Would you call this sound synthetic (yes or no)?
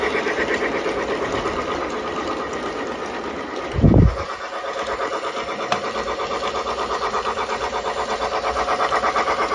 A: no